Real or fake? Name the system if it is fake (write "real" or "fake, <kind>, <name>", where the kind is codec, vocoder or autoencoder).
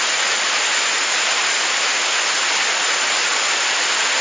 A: real